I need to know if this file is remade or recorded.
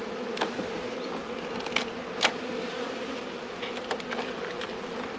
recorded